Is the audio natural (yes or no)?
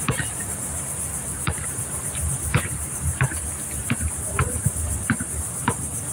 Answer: no